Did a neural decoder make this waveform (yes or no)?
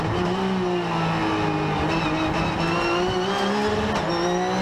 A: no